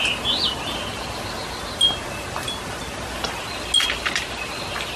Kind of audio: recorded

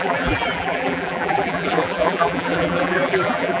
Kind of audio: remade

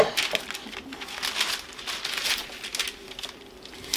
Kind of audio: recorded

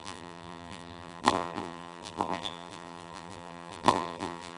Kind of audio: remade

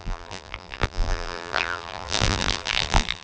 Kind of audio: remade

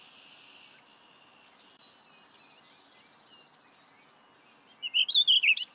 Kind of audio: recorded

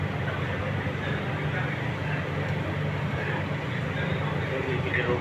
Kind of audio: recorded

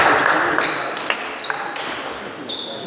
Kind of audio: recorded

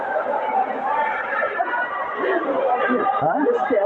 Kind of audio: remade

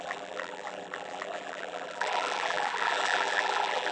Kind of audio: remade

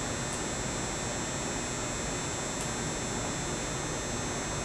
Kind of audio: recorded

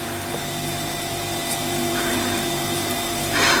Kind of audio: remade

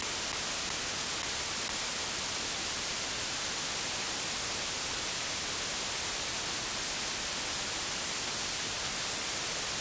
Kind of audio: recorded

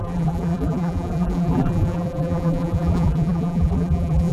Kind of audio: remade